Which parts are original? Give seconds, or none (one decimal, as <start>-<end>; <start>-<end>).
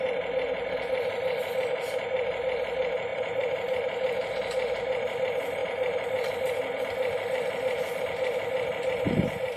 0.0-3.1; 4.3-5.6; 6.3-9.6